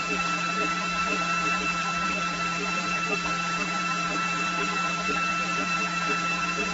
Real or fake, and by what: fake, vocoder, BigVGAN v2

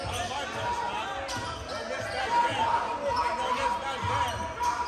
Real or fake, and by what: real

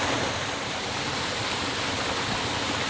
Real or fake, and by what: real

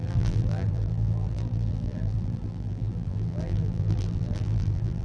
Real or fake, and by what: fake, vocoder, BigVGAN v2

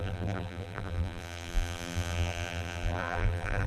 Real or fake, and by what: fake, vocoder, BigVGAN v2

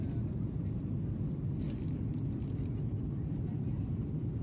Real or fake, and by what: real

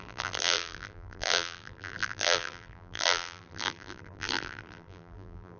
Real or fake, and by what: fake, vocoder, BigVGAN v2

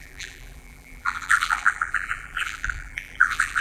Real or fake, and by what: fake, vocoder, BigVGAN v2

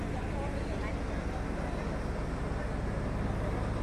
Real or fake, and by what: real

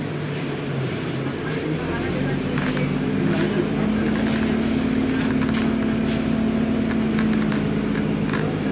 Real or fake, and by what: real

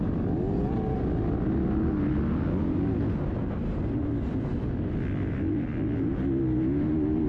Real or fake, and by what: real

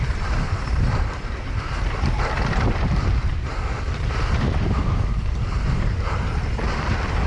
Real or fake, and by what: fake, vocoder, BigVGAN v2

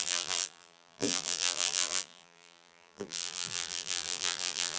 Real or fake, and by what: fake, vocoder, BigVGAN v2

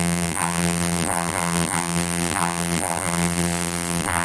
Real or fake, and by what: fake, vocoder, BigVGAN v2